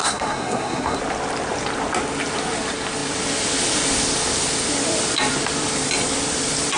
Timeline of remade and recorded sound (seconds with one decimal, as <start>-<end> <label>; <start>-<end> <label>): 0.0-1.0 remade; 1.0-6.8 recorded